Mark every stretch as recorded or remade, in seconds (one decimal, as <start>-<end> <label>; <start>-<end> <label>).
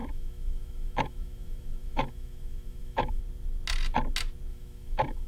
0.0-3.2 remade; 3.2-4.5 recorded; 4.5-5.3 remade